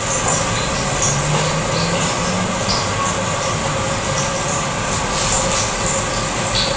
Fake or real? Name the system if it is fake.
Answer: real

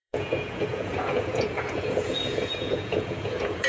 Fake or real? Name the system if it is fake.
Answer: fake, vocoder, Vocos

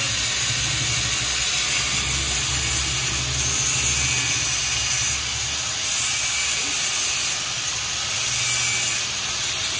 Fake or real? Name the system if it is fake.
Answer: real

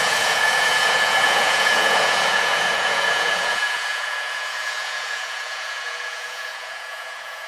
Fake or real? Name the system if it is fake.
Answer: fake, vocoder, Vocos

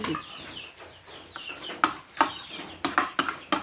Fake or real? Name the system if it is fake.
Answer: real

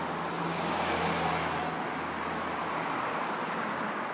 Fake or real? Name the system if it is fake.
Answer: real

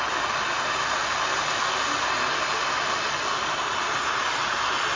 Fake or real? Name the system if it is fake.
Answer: real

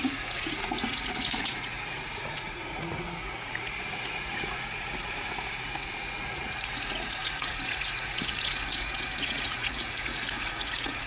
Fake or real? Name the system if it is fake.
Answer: fake, vocoder, Vocos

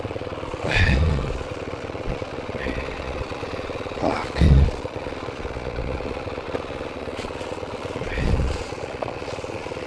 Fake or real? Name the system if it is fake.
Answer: fake, vocoder, Vocos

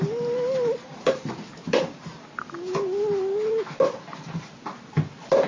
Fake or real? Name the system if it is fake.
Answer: real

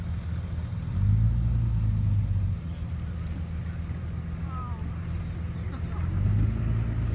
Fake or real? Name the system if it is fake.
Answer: real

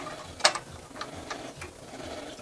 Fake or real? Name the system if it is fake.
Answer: real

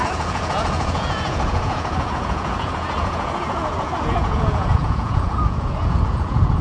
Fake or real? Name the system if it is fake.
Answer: fake, vocoder, Vocos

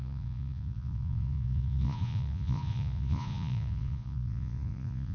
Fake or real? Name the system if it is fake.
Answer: fake, vocoder, Vocos